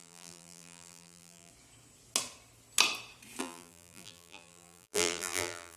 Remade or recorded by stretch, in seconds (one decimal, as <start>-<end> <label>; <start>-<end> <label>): 0.0-1.5 remade; 1.5-3.4 recorded; 3.4-5.8 remade